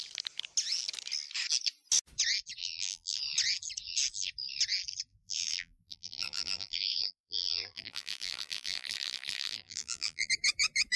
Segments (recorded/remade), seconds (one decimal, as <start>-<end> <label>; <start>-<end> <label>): 0.0-2.6 recorded; 2.6-3.2 remade; 3.2-5.1 recorded; 5.1-10.3 remade; 10.3-11.0 recorded